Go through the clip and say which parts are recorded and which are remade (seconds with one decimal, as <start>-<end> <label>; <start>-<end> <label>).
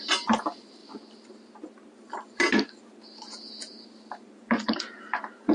0.0-0.8 remade; 0.8-4.1 recorded; 4.1-5.5 remade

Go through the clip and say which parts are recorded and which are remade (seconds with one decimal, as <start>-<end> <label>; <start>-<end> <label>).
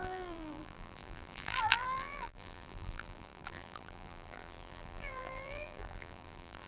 0.0-6.7 remade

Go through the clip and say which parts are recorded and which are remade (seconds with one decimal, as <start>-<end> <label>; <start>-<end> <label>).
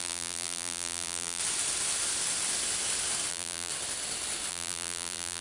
0.0-1.4 remade; 1.4-3.3 recorded; 3.3-3.7 remade; 3.7-4.5 recorded; 4.5-5.4 remade